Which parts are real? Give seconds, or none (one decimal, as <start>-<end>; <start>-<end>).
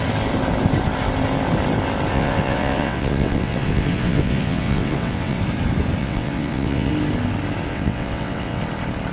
0.0-2.1; 5.4-6.0; 6.9-7.7; 8.6-9.1